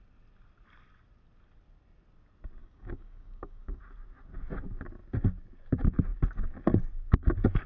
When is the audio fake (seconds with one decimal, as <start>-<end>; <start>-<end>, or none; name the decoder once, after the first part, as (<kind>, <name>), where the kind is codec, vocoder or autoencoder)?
2.6-3.8 (codec, DAC)